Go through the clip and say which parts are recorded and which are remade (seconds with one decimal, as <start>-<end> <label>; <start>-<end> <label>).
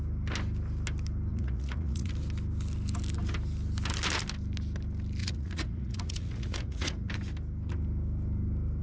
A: 0.0-1.3 recorded; 1.3-2.1 remade; 2.1-5.2 recorded; 5.2-7.1 remade; 7.1-8.8 recorded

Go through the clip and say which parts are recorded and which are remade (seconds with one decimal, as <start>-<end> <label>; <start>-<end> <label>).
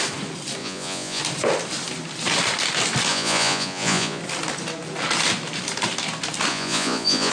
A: 0.0-0.6 recorded; 0.6-1.2 remade; 1.2-3.1 recorded; 3.1-4.2 remade; 4.2-6.5 recorded; 6.5-7.3 remade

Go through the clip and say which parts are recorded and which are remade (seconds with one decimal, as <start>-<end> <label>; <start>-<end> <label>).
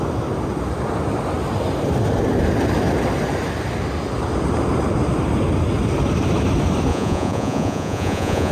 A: 0.0-6.9 recorded; 6.9-8.5 remade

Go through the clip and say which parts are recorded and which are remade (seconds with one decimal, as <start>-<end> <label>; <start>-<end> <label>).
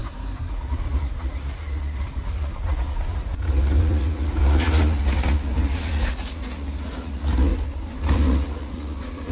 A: 0.0-0.5 recorded; 0.5-7.5 remade; 7.5-8.0 recorded; 8.0-9.3 remade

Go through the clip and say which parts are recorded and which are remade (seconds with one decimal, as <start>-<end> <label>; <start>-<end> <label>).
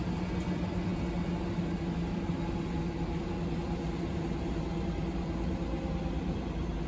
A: 0.0-6.9 recorded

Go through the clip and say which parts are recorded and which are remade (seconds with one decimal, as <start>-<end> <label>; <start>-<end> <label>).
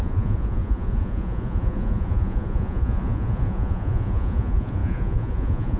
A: 0.0-5.8 remade